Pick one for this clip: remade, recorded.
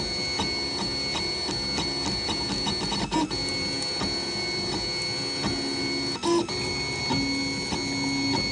recorded